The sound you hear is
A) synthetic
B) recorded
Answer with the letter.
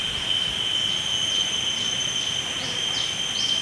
B